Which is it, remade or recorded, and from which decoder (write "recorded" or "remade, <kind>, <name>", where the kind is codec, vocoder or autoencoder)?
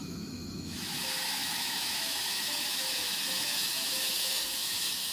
remade, autoencoder, DAC-VAE